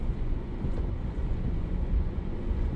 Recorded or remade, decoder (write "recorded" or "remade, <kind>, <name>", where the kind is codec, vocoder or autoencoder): remade, vocoder, Vocos